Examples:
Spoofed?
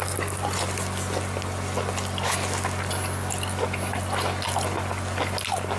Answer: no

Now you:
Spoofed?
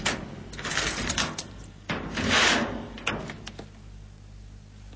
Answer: no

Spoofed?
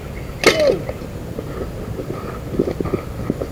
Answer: no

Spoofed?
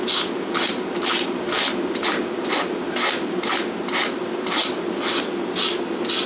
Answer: no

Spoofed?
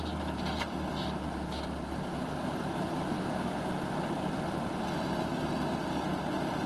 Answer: no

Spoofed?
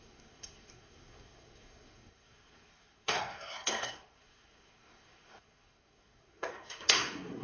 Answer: yes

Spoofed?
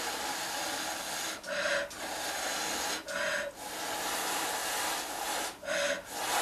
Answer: no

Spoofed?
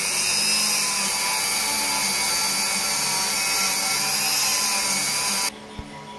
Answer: no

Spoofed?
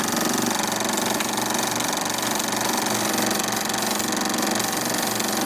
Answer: no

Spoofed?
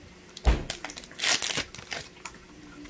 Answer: no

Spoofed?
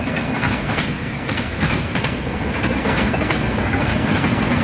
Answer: yes